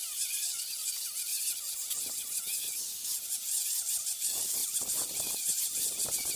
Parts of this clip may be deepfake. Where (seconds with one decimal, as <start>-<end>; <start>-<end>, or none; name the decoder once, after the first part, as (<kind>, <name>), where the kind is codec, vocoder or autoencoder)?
0.0-0.5 (vocoder, BigVGAN v2); 4.6-5.6